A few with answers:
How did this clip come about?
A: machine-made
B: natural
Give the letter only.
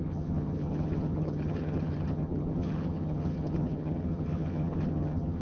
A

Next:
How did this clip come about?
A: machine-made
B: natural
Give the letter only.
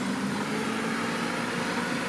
B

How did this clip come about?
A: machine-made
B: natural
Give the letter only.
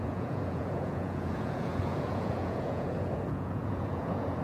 A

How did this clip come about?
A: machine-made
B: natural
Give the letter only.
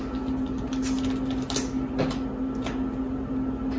B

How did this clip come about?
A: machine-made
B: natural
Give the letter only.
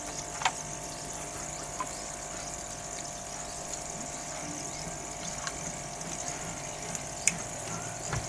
B